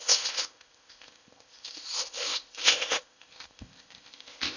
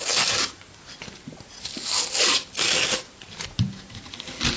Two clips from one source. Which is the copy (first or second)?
first